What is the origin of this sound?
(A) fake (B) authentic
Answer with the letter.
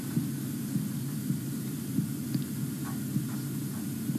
B